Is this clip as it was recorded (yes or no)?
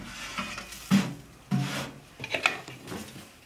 yes